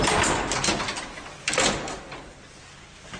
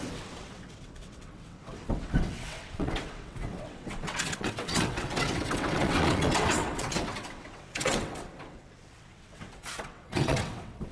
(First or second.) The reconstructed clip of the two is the second